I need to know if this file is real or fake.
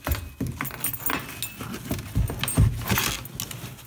real